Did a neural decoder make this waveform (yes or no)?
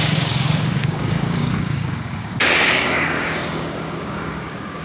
yes